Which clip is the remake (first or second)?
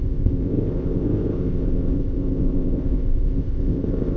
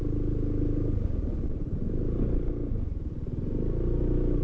first